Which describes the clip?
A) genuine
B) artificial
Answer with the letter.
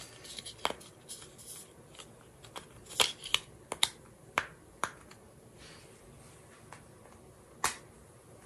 A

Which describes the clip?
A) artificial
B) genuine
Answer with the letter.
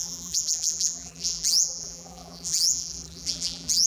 A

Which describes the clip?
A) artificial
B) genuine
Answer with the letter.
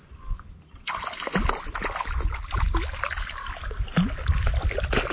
B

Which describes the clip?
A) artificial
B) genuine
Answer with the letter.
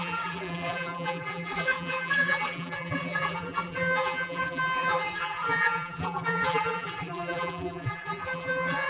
A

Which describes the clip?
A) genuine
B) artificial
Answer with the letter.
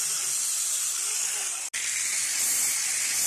A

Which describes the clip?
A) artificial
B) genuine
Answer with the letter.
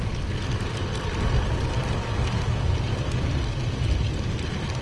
B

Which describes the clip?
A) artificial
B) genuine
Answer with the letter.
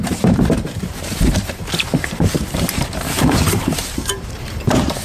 A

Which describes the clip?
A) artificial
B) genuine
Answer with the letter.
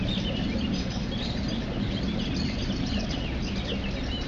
B